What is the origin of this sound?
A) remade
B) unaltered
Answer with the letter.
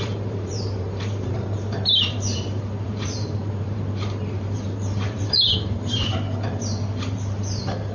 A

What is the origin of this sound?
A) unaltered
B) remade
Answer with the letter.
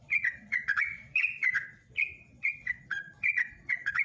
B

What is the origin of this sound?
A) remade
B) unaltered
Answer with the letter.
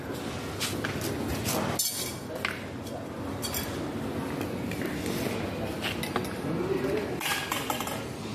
B